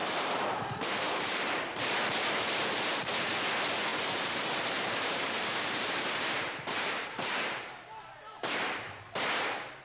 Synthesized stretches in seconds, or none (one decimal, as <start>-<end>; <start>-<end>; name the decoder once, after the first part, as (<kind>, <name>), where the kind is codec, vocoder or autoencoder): 0.0-1.8 (vocoder, BigVGAN v2); 3.9-8.6